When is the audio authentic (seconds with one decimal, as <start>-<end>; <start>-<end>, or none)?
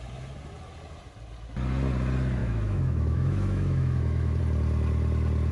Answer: 0.0-2.4; 4.4-5.5